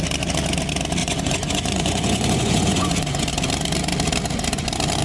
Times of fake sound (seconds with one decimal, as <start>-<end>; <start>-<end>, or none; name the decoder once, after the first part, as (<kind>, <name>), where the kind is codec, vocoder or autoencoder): 1.0-3.3 (vocoder, Vocos)